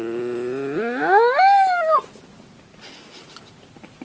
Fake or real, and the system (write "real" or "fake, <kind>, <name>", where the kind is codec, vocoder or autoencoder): real